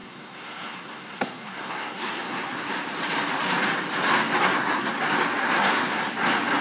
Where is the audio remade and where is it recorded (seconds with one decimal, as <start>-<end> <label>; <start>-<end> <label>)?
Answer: 0.0-2.7 remade; 2.7-4.4 recorded; 4.4-4.9 remade; 4.9-5.4 recorded; 5.4-6.1 remade; 6.1-6.6 recorded